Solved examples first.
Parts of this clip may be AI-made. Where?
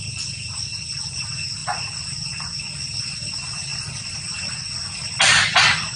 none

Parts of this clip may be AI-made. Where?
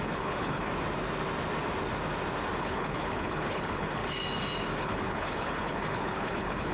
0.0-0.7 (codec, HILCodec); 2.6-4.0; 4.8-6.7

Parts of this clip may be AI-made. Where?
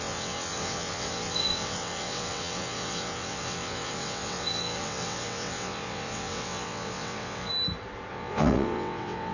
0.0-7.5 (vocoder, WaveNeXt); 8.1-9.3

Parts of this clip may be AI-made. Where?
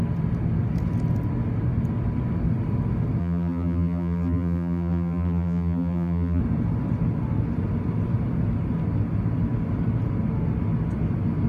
3.2-6.4 (vocoder, BigVGAN v2)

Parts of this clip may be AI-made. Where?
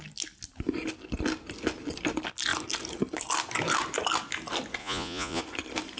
4.8-5.4 (vocoder, Vocos)